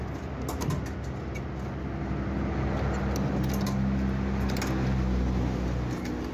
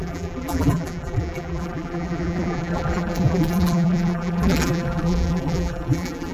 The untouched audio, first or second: first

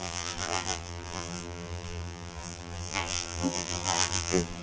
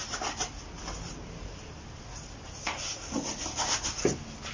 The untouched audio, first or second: second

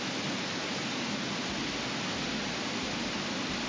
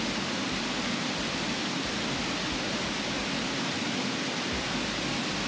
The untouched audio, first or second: second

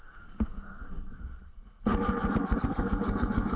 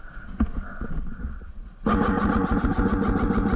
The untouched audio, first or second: second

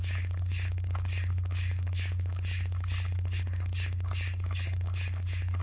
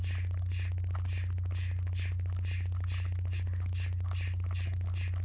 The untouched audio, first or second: second